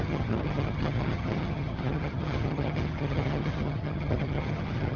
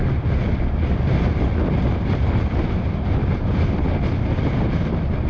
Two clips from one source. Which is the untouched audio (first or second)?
second